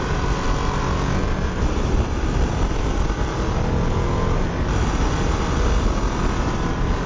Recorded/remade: recorded